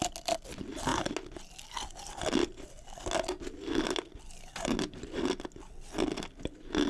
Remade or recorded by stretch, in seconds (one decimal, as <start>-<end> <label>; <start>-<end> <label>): 0.0-6.9 recorded